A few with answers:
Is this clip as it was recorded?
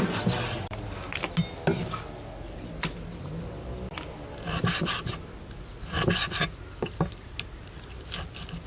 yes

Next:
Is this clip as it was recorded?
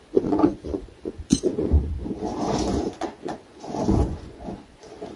no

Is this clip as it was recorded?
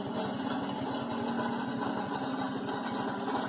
yes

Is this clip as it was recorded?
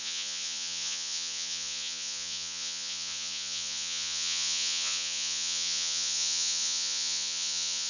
no